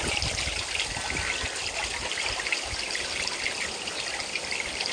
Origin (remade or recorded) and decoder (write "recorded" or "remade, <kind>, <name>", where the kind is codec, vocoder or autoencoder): recorded